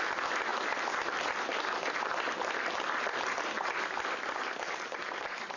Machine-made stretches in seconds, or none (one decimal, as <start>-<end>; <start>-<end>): none